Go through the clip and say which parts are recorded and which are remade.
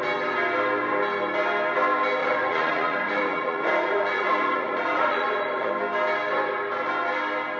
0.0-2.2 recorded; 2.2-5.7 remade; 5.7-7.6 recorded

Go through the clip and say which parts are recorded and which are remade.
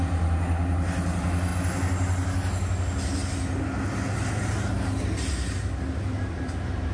0.0-6.9 recorded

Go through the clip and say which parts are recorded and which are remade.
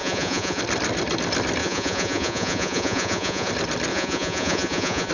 0.0-0.6 remade; 0.6-1.6 recorded; 1.6-3.5 remade; 3.5-3.9 recorded; 3.9-5.1 remade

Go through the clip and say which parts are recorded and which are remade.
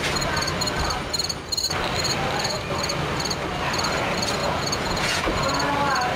0.0-4.4 recorded; 4.4-5.3 remade; 5.3-6.2 recorded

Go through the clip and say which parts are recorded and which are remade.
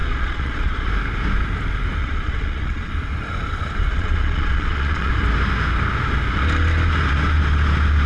0.0-0.9 remade; 0.9-2.0 recorded; 2.0-2.9 remade; 2.9-3.9 recorded; 3.9-5.1 remade; 5.1-8.1 recorded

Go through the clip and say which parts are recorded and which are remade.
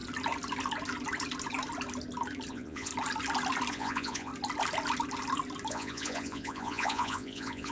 0.0-2.5 recorded; 2.5-2.9 remade; 2.9-3.7 recorded; 3.7-4.3 remade; 4.3-5.7 recorded; 5.7-7.7 remade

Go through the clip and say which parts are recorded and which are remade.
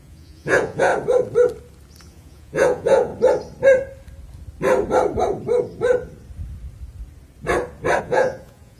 0.0-0.9 remade; 0.9-2.0 recorded; 2.0-3.1 remade; 3.1-8.0 recorded; 8.0-8.8 remade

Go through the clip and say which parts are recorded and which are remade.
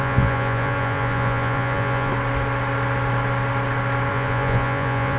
0.0-2.1 remade; 2.1-4.1 recorded; 4.1-5.2 remade